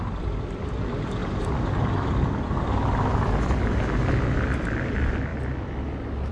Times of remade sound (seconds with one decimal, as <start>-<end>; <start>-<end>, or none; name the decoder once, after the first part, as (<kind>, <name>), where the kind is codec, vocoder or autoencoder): none